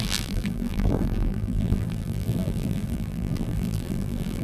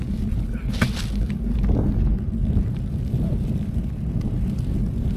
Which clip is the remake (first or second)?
first